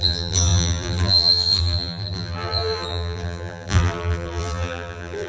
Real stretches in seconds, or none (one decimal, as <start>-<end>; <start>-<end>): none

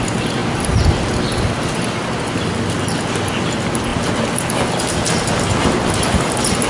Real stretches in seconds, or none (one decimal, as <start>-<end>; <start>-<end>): 0.0-6.7

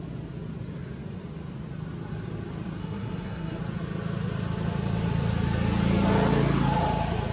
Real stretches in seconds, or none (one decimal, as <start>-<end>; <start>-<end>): 0.0-2.8; 3.6-7.3